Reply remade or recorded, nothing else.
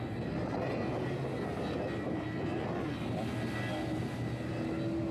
recorded